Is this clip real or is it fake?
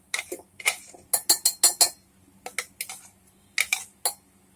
real